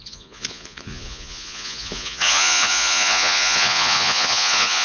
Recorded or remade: remade